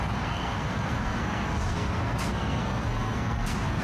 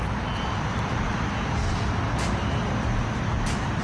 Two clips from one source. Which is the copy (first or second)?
first